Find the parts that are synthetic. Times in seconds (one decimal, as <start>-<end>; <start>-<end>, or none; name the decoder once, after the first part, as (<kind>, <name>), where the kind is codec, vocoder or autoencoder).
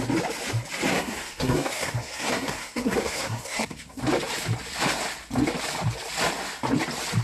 0.9-4.0 (codec, SNAC)